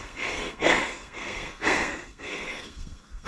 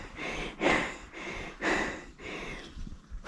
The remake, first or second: first